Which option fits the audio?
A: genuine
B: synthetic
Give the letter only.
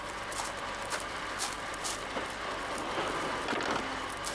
A